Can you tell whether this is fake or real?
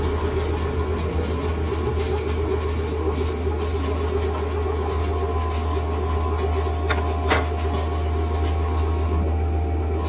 real